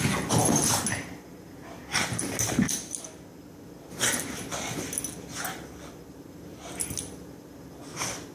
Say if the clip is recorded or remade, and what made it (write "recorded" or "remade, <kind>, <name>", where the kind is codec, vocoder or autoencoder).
recorded